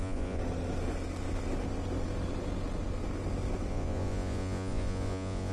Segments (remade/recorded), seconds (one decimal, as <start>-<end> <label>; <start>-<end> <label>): 0.0-0.4 remade; 0.4-3.7 recorded; 3.7-5.5 remade